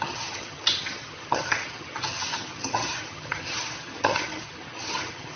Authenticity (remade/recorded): remade